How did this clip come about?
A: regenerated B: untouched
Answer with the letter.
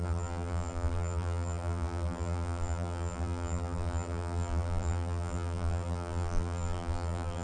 A